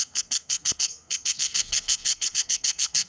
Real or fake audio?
fake